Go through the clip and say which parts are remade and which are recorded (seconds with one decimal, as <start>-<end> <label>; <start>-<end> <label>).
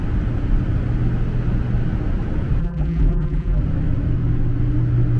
0.0-2.6 recorded; 2.6-3.6 remade; 3.6-5.2 recorded